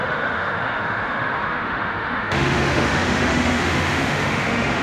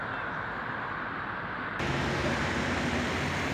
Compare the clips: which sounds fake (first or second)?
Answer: first